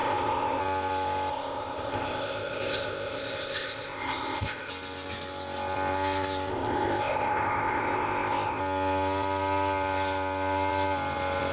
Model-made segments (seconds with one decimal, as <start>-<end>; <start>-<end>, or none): 0.0-0.6; 1.3-4.7; 6.5-8.6